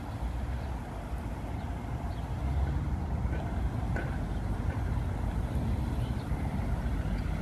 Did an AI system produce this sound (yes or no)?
no